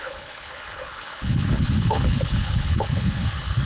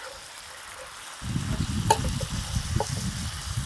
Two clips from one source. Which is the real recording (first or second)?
second